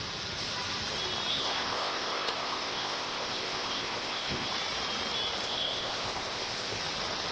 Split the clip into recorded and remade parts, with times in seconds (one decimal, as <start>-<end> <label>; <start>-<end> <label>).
0.0-1.3 recorded; 1.3-4.5 remade; 4.5-5.4 recorded; 5.4-6.8 remade; 6.8-7.3 recorded

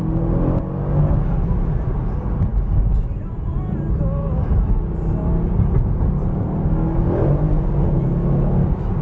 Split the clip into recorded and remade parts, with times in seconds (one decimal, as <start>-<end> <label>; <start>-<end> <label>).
0.0-9.0 recorded

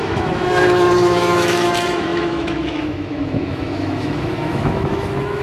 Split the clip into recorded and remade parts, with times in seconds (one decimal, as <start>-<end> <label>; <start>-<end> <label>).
0.0-5.4 remade